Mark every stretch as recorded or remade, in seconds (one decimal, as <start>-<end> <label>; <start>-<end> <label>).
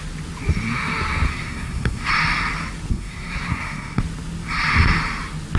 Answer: 0.0-1.3 recorded; 1.3-2.1 remade; 2.1-2.9 recorded; 2.9-4.0 remade; 4.0-5.6 recorded